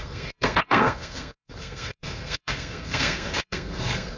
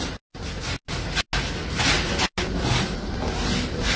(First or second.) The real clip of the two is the second